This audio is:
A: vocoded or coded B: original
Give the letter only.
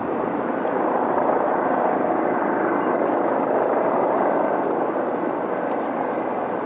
B